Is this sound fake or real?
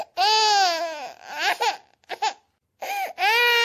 real